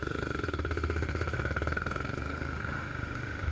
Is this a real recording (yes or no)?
no